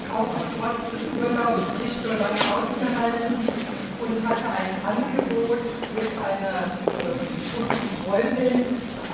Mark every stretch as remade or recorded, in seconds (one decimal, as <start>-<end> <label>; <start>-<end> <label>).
0.0-3.8 remade; 3.8-4.5 recorded; 4.5-5.1 remade; 5.1-6.6 recorded; 6.6-9.1 remade